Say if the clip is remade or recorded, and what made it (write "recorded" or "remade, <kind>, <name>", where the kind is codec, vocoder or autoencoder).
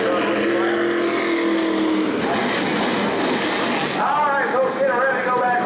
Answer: recorded